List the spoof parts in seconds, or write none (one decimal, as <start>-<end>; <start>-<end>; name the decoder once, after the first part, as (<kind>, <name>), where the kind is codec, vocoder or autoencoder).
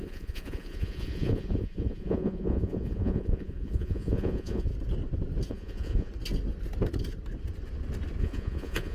0.0-4.7 (vocoder, Vocos); 5.5-6.1; 8.2-8.9